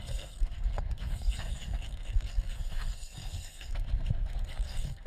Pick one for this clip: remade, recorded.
remade